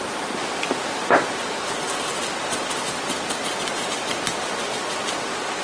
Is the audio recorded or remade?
recorded